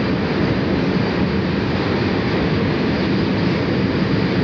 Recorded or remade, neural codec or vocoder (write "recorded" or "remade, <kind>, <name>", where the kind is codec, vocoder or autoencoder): recorded